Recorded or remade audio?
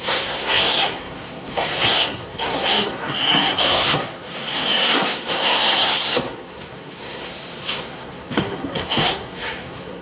remade